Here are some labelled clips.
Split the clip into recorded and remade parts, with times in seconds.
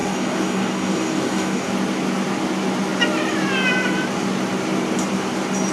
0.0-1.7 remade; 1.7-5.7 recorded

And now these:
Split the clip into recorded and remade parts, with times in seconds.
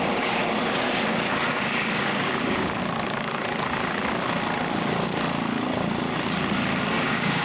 0.0-0.4 remade; 0.4-1.5 recorded; 1.5-2.8 remade; 2.8-7.0 recorded; 7.0-7.4 remade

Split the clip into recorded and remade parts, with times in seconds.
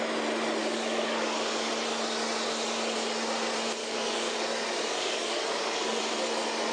0.0-0.6 recorded; 0.6-1.7 remade; 1.7-3.8 recorded; 3.8-6.0 remade; 6.0-6.7 recorded